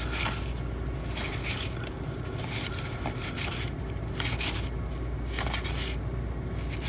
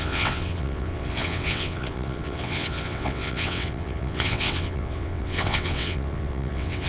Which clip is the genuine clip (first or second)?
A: first